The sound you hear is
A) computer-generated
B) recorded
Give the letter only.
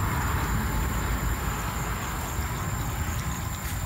B